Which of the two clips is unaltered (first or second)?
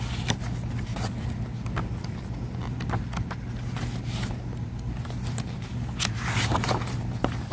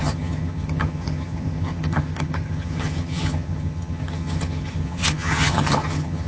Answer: first